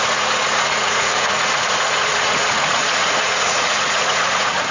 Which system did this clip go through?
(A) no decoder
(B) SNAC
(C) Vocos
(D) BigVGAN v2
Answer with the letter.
C